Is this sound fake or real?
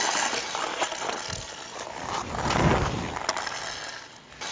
real